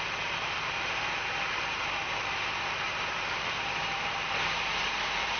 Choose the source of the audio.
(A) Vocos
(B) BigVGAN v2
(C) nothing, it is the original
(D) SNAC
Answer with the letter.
B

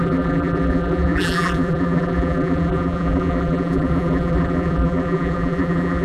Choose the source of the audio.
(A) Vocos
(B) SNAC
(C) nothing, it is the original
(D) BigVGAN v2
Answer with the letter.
D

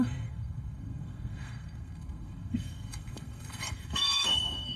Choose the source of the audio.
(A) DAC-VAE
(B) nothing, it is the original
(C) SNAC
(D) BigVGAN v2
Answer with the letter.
C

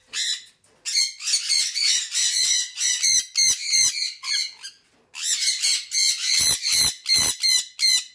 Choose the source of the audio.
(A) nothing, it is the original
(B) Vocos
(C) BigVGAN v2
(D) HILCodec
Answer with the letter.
A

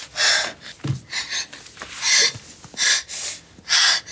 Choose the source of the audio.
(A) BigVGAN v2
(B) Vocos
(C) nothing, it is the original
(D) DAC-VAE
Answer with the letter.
C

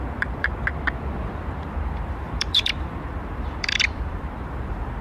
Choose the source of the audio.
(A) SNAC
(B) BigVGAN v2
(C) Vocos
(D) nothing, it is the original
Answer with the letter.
B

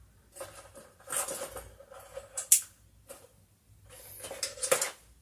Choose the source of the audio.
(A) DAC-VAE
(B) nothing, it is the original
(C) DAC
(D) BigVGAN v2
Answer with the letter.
B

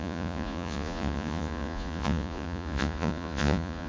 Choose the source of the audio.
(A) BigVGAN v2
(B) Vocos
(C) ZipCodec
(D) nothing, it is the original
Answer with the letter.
B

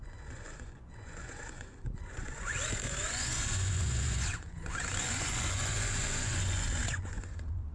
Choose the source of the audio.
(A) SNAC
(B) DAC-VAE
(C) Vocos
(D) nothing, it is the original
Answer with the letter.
C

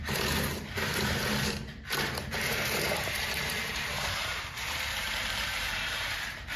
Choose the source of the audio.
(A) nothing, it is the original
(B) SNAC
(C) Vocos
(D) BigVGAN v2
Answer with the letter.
D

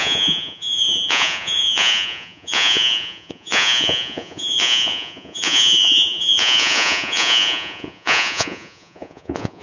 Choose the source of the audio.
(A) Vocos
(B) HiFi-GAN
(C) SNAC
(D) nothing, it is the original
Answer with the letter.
A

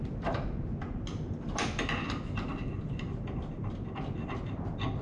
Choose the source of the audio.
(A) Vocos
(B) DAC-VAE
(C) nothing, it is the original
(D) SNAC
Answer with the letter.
C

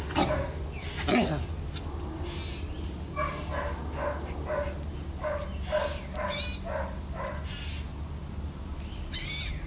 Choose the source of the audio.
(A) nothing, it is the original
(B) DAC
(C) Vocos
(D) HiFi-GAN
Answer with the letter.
A